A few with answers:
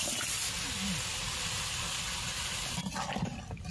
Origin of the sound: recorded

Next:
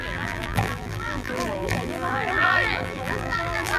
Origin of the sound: remade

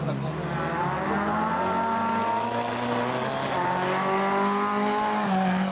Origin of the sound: recorded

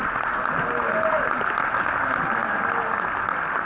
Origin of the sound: recorded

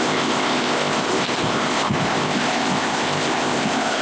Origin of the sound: remade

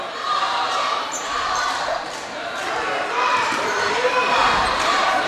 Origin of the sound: remade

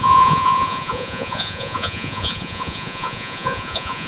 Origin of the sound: remade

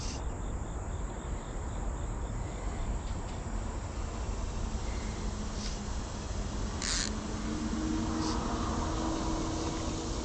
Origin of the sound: recorded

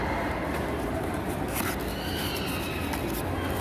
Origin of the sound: recorded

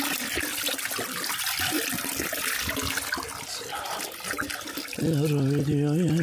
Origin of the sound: recorded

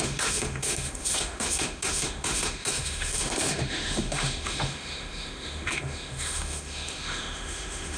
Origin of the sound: remade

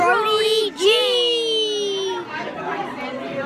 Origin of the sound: recorded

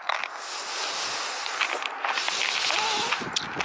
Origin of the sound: recorded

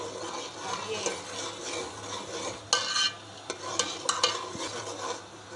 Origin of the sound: recorded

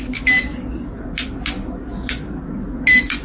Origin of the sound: remade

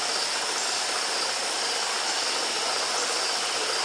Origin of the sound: recorded